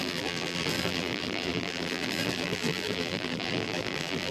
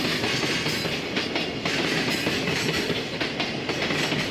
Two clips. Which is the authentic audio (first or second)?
second